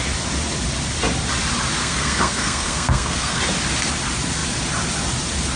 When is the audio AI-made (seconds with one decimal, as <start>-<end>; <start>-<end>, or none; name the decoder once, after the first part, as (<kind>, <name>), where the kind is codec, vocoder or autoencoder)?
1.8-3.4 (codec, SNAC)